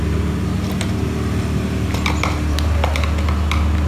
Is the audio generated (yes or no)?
no